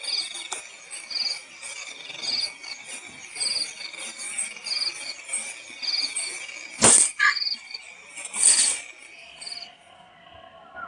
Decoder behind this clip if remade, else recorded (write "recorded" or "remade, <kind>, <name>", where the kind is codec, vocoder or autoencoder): recorded